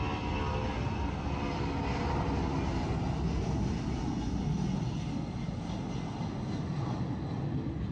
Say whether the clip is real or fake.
real